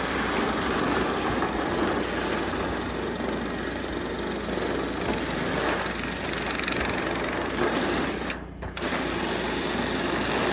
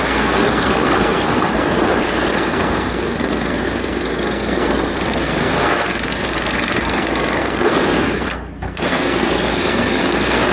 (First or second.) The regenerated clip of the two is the second